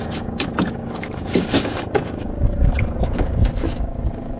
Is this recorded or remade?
remade